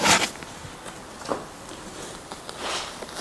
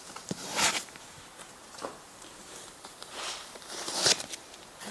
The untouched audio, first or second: first